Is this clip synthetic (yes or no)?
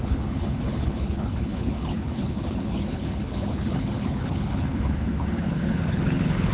yes